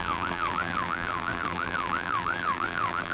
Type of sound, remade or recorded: remade